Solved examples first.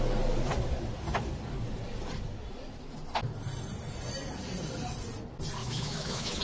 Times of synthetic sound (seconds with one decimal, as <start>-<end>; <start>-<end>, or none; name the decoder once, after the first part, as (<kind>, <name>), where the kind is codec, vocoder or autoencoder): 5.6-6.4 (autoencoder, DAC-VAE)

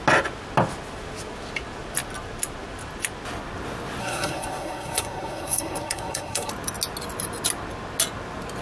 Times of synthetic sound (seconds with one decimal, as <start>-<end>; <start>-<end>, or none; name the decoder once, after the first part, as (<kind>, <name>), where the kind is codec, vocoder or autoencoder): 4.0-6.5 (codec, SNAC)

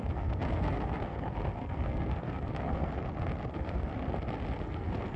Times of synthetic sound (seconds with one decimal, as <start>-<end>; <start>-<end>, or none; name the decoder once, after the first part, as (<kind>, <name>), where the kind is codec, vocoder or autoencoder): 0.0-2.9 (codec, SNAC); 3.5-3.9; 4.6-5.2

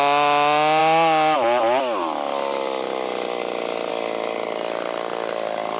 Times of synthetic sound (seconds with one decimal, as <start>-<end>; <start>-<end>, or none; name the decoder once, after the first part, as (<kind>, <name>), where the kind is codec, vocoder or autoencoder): none